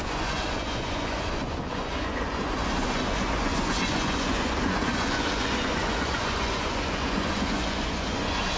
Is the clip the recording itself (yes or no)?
no